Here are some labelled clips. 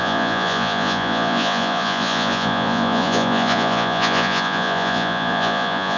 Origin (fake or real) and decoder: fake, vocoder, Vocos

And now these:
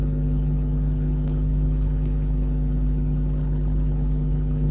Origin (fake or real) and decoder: fake, codec, HILCodec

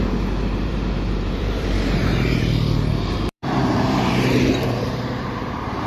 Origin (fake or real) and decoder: fake, vocoder, BigVGAN v2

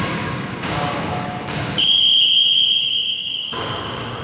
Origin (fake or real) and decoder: fake, codec, DAC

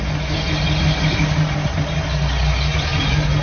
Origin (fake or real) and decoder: real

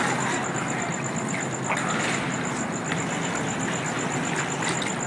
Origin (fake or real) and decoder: real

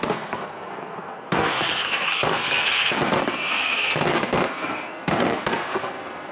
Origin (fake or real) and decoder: fake, codec, SNAC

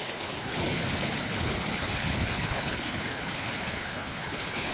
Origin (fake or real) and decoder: fake, codec, HILCodec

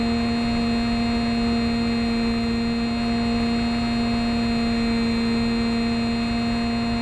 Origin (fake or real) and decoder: real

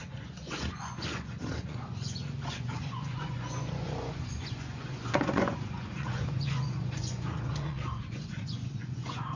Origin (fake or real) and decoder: fake, vocoder, Vocos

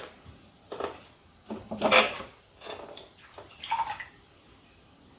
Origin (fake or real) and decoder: fake, vocoder, BigVGAN v2